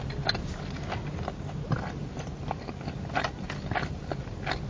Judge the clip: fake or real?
real